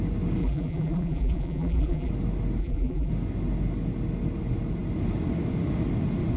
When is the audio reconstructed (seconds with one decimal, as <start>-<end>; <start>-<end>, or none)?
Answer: 0.4-2.1; 2.6-3.1